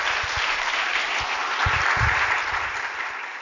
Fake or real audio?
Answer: real